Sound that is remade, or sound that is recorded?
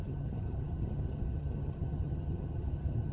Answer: remade